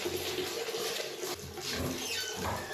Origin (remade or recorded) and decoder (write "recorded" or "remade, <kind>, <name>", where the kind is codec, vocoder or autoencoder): recorded